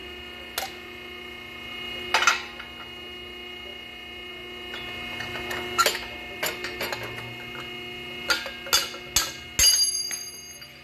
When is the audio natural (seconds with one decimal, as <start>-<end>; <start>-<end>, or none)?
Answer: 0.0-10.8